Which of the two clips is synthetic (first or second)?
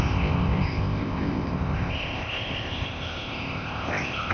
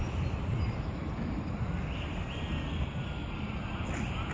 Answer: first